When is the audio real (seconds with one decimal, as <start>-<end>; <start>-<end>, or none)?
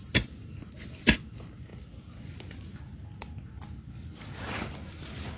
0.0-5.4